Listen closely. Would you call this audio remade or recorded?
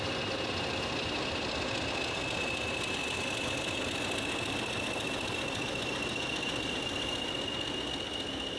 recorded